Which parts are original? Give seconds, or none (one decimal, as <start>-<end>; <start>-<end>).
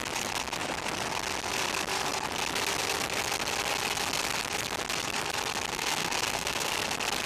0.0-5.7; 6.7-7.3